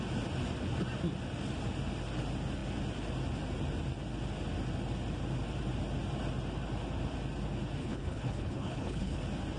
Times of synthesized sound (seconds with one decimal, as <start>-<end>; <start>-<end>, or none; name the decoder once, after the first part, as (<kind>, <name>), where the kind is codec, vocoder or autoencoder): 7.8-9.2 (codec, HILCodec)